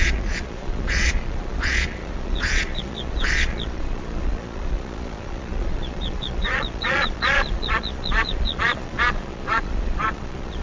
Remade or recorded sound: remade